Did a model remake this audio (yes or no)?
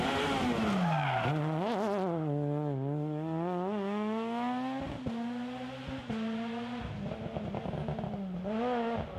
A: no